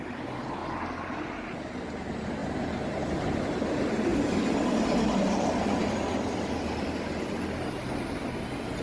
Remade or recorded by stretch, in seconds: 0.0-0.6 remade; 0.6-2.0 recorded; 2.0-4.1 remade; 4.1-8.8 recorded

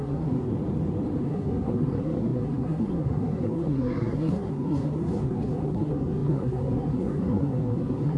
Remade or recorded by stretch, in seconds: 0.0-0.5 remade; 0.5-1.2 recorded; 1.2-8.2 remade

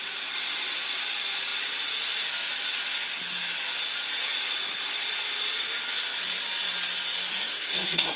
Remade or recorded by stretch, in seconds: 0.0-7.3 recorded; 7.3-8.2 remade

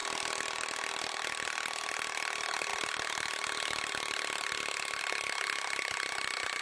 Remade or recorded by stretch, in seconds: 0.0-6.6 recorded

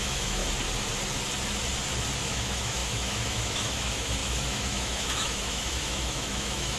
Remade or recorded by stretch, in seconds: 0.0-0.4 remade; 0.4-2.2 recorded; 2.2-6.8 remade

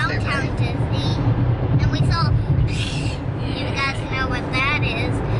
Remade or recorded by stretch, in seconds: 0.0-0.6 remade; 0.6-1.1 recorded; 1.1-4.3 remade; 4.3-5.4 recorded

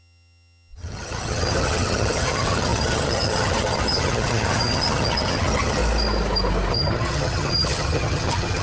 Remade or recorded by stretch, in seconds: 0.0-5.8 remade; 5.8-6.7 recorded; 6.7-8.6 remade

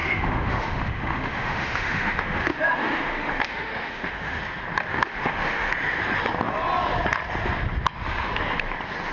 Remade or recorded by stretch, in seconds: 0.0-4.4 remade; 4.4-4.9 recorded; 4.9-5.7 remade; 5.7-9.1 recorded